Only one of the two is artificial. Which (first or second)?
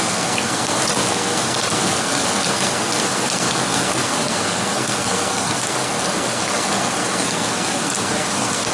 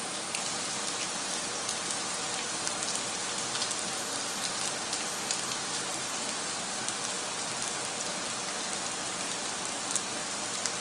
first